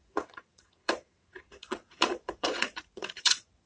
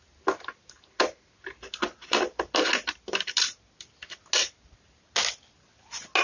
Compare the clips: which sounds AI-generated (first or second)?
first